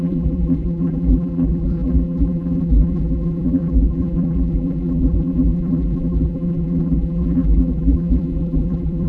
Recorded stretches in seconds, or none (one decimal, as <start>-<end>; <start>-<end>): none